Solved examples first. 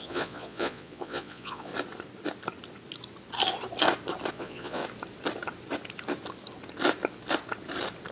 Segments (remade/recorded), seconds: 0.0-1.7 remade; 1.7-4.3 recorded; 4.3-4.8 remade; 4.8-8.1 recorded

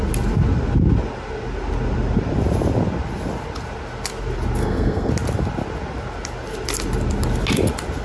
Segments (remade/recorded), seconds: 0.0-4.6 recorded; 4.6-5.1 remade; 5.1-8.0 recorded

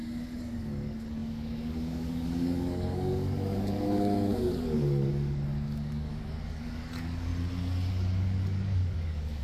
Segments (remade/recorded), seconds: 0.0-7.3 remade; 7.3-7.9 recorded; 7.9-9.4 remade

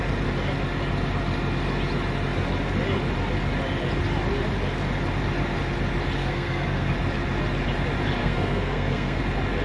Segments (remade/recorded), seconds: 0.0-6.2 recorded; 6.2-6.9 remade; 6.9-8.2 recorded; 8.2-9.2 remade; 9.2-9.6 recorded

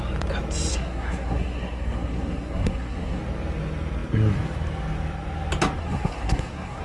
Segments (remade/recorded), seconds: 0.0-0.7 recorded; 0.7-3.2 remade; 3.2-5.8 recorded; 5.8-6.8 remade

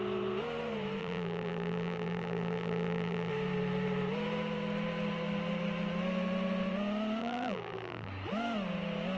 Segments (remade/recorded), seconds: 0.0-1.0 recorded; 1.0-3.3 remade; 3.3-7.2 recorded; 7.2-8.1 remade; 8.1-9.2 recorded

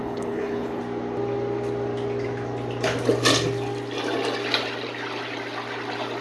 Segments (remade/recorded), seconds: 0.0-0.8 remade; 0.8-6.2 recorded

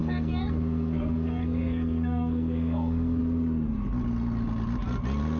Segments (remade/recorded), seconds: 0.0-3.2 remade; 3.2-5.4 recorded